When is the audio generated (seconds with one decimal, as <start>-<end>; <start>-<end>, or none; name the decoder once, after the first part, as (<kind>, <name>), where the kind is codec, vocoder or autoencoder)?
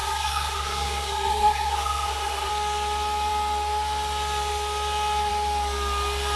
0.0-2.5 (codec, SNAC)